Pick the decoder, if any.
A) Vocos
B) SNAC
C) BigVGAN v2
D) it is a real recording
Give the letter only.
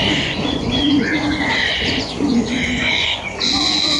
A